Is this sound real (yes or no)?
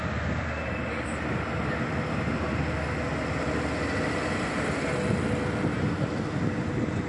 yes